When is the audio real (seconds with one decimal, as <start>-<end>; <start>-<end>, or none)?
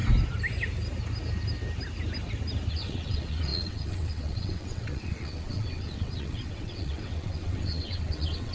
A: 0.0-2.7